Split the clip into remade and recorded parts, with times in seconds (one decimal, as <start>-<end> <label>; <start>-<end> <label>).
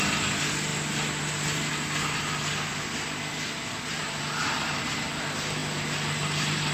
0.0-4.0 recorded; 4.0-5.1 remade; 5.1-6.7 recorded